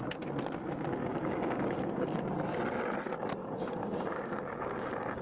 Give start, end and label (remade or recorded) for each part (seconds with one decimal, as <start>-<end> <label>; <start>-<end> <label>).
0.0-1.0 recorded; 1.0-2.2 remade; 2.2-3.4 recorded; 3.4-5.2 remade